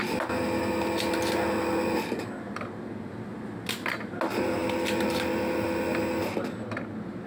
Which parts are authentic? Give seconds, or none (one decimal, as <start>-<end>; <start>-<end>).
0.0-7.3